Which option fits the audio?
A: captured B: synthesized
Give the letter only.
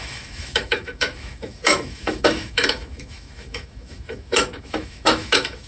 B